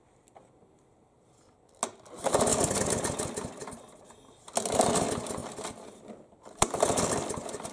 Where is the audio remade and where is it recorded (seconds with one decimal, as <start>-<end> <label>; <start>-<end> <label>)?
0.0-5.4 recorded; 5.4-6.1 remade; 6.1-7.7 recorded

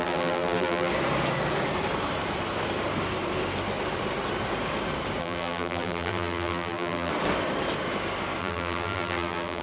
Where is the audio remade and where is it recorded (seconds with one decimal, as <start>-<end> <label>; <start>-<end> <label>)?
0.0-0.9 remade; 0.9-5.2 recorded; 5.2-7.1 remade; 7.1-8.4 recorded; 8.4-9.6 remade

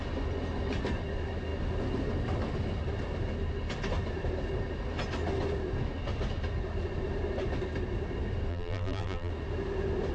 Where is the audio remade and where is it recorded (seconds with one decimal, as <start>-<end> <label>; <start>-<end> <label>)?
0.0-8.5 recorded; 8.5-9.3 remade; 9.3-10.1 recorded

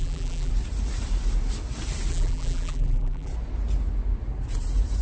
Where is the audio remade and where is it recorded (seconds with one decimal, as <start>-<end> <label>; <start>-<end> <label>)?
0.0-0.5 remade; 0.5-2.1 recorded; 2.1-3.3 remade; 3.3-5.0 recorded